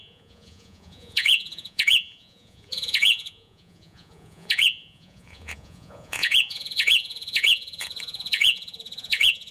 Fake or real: fake